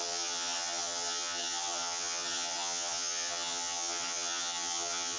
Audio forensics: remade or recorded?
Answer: remade